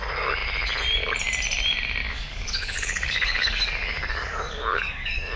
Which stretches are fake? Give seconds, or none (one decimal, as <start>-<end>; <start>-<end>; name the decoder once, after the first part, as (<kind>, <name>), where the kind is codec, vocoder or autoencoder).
2.0-5.4 (codec, DAC)